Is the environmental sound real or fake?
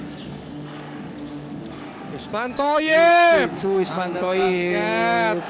fake